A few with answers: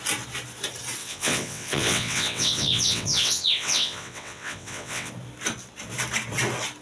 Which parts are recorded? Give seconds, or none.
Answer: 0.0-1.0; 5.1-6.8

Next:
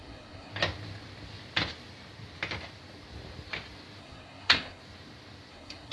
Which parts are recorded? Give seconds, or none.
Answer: 0.5-4.0; 4.8-5.5

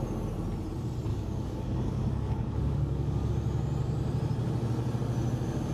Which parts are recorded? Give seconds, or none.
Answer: 0.0-1.1; 3.3-5.7

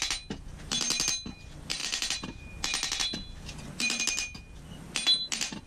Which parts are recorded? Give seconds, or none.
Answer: 0.0-1.8; 4.0-5.7

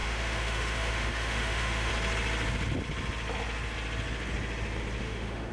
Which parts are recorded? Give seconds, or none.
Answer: 1.9-5.0

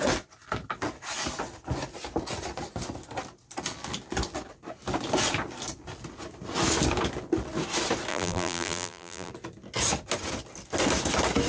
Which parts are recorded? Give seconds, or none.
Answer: 0.0-8.1; 9.3-11.5